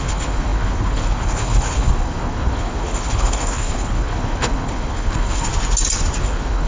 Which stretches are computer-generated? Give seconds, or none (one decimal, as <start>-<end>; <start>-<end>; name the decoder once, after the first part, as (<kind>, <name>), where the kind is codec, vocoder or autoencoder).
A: 0.0-5.5 (codec, HILCodec); 6.2-6.7